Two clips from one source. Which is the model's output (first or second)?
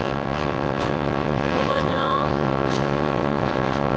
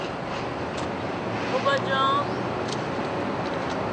first